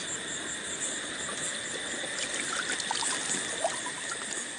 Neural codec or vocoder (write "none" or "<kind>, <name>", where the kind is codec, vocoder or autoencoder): none